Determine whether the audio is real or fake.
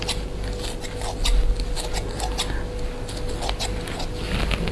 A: real